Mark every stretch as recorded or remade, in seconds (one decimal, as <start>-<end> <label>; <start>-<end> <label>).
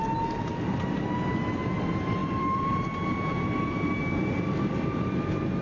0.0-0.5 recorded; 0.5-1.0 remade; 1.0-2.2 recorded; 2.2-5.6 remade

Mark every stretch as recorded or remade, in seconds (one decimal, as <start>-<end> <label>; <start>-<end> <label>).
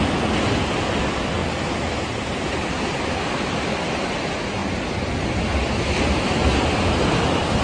0.0-7.6 recorded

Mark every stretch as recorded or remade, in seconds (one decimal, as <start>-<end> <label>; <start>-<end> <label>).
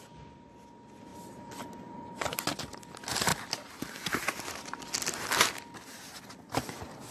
0.0-1.1 recorded; 1.1-2.4 remade; 2.4-7.1 recorded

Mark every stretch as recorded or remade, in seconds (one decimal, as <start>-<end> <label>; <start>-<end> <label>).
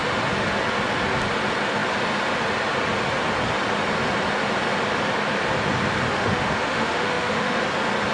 0.0-6.1 recorded; 6.1-7.6 remade; 7.6-8.1 recorded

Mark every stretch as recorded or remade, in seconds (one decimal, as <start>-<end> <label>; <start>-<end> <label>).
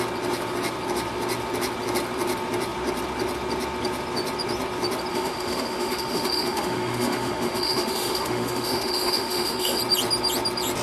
0.0-5.1 recorded; 5.1-9.8 remade; 9.8-10.8 recorded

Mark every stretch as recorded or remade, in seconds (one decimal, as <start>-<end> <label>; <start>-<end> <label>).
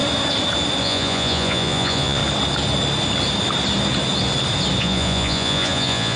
0.0-0.8 recorded; 0.8-2.2 remade; 2.2-4.8 recorded; 4.8-6.2 remade